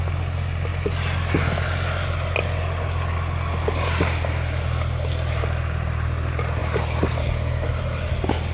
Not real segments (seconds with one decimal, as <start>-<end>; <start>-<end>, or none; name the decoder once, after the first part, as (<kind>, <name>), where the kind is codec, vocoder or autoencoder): none